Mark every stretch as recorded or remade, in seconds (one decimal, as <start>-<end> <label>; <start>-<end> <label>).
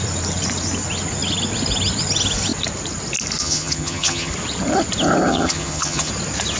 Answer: 0.0-3.4 recorded; 3.4-4.3 remade; 4.3-5.3 recorded; 5.3-6.1 remade; 6.1-6.6 recorded